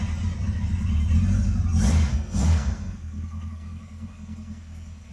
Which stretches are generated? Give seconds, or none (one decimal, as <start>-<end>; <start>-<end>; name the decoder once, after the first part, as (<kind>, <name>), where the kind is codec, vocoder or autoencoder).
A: 2.1-5.1 (codec, SNAC)